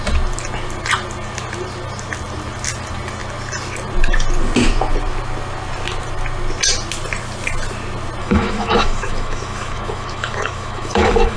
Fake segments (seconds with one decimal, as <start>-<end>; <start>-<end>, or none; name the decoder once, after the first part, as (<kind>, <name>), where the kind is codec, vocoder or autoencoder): 8.2-11.4 (autoencoder, DAC-VAE)